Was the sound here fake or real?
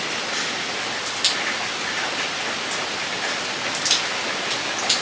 real